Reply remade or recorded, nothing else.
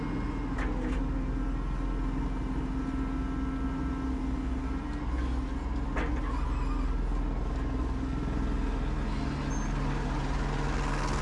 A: recorded